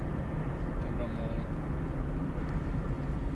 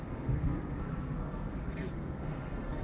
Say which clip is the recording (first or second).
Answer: first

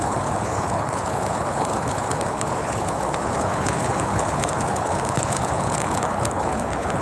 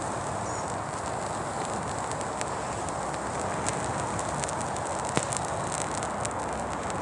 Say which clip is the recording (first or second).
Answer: second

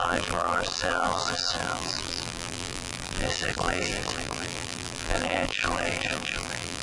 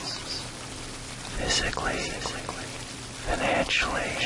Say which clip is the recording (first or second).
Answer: second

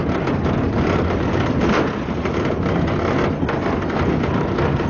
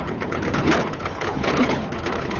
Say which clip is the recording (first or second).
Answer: first